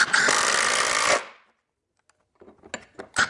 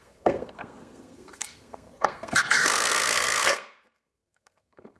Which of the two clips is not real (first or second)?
second